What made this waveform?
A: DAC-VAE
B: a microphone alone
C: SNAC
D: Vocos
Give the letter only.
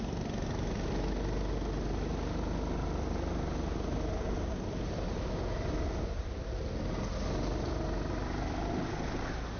B